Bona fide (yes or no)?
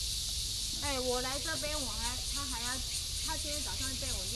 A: yes